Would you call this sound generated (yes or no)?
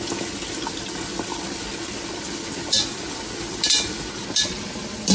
no